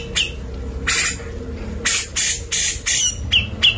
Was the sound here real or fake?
real